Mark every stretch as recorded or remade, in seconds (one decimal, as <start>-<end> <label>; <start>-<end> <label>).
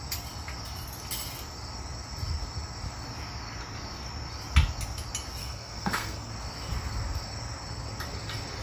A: 0.0-5.4 recorded; 5.4-6.3 remade; 6.3-8.6 recorded